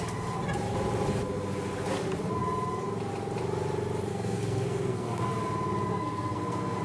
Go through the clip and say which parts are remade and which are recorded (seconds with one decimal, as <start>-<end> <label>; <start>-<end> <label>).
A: 0.0-4.1 recorded; 4.1-5.3 remade; 5.3-5.9 recorded; 5.9-6.8 remade